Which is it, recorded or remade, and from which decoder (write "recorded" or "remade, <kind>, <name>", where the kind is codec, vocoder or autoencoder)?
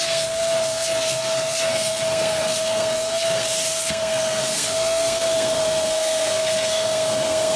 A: remade, codec, SNAC